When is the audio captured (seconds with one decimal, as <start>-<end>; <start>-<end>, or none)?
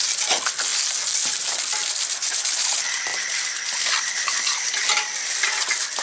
0.7-1.4; 3.1-3.7